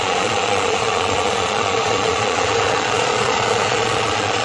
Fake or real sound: fake